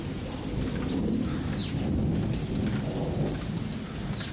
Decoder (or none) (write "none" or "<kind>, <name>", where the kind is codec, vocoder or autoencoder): none